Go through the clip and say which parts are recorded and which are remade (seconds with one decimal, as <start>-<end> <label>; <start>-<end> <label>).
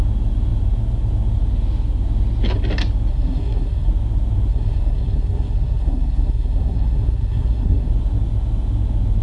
0.0-3.1 recorded; 3.1-3.9 remade; 3.9-4.5 recorded; 4.5-7.9 remade; 7.9-9.2 recorded